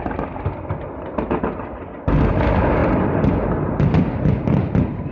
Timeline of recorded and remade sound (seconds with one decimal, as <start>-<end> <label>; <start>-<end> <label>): 0.0-5.1 recorded